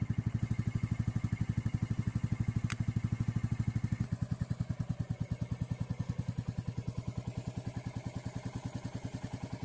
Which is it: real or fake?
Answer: real